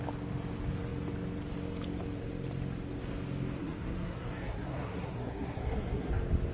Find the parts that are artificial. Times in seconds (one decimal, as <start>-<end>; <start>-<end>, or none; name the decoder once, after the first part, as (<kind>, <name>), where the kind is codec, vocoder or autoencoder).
3.6-6.1 (codec, SNAC)